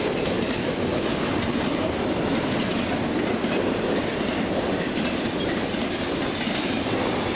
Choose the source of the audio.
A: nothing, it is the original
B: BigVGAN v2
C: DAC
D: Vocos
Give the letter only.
A